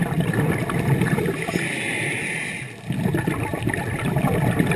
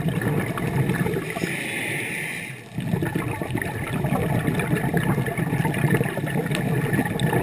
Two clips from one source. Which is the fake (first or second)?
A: first